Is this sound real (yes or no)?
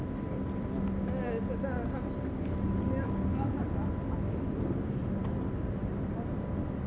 yes